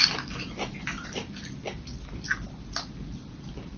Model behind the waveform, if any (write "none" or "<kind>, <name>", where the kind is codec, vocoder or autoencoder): none